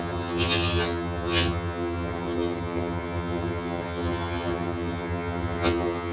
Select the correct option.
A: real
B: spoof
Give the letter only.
B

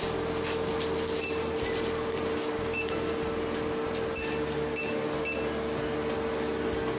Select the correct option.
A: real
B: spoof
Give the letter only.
A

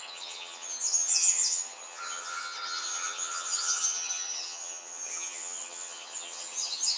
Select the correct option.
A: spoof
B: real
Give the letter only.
A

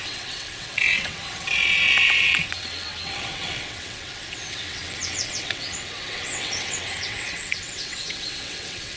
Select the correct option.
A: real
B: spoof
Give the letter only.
B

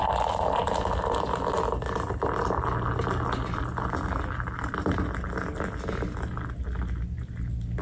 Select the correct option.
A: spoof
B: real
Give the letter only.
B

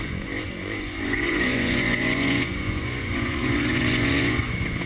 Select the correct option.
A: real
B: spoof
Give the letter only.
B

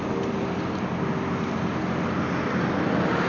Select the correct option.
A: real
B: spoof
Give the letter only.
A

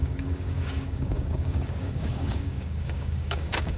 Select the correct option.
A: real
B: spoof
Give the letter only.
B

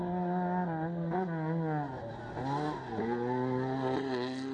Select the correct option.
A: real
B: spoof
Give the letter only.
A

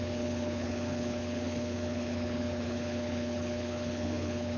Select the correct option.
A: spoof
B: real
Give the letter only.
A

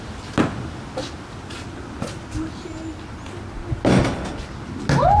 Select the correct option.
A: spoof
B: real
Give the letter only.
B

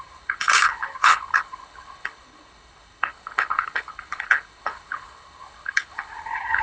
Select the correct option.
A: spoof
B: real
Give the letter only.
A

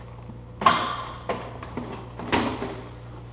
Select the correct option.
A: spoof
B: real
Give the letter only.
B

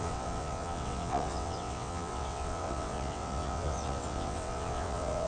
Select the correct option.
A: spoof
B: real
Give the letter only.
A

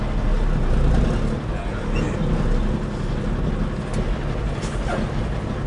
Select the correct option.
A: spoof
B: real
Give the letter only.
B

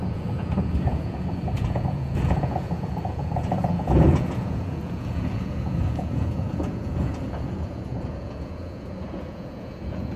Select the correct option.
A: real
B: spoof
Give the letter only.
B